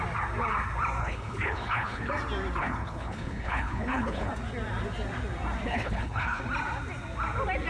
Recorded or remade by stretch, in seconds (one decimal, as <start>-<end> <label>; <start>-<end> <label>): 0.0-1.0 recorded; 1.0-2.1 remade; 2.1-2.6 recorded; 2.6-4.3 remade; 4.3-5.7 recorded; 5.7-6.4 remade; 6.4-7.7 recorded

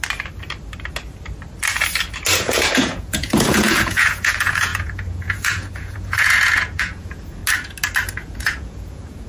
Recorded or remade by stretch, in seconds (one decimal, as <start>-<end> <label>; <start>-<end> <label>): 0.0-2.4 recorded; 2.4-7.4 remade; 7.4-8.1 recorded; 8.1-9.3 remade

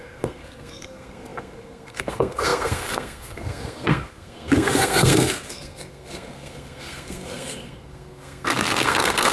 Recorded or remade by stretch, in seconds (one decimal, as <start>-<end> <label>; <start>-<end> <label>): 0.0-9.3 remade

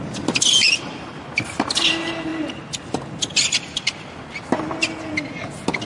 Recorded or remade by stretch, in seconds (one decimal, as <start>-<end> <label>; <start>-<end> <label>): 0.0-5.8 recorded

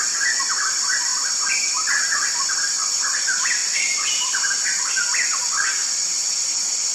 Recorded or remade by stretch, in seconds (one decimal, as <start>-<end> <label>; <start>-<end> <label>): 0.0-6.9 recorded

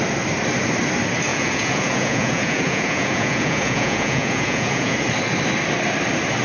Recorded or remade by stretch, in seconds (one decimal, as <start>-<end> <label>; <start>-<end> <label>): 0.0-1.3 recorded; 1.3-5.0 remade; 5.0-6.4 recorded